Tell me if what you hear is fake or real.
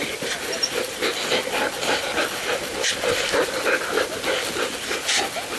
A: real